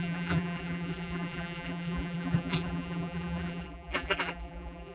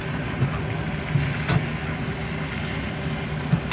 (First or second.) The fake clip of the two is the first